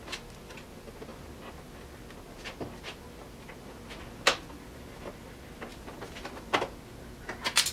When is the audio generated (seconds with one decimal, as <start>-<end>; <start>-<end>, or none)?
5.7-6.6